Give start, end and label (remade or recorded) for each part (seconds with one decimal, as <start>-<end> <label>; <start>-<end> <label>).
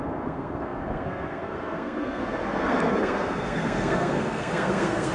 0.0-5.1 remade